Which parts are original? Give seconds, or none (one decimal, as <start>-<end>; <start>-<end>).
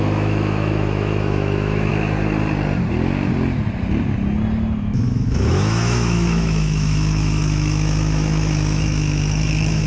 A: 1.9-4.8